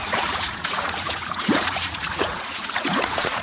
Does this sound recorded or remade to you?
remade